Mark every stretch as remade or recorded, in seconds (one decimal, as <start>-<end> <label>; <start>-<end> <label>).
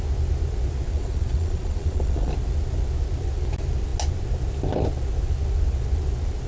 0.0-0.9 recorded; 0.9-2.3 remade; 2.3-6.5 recorded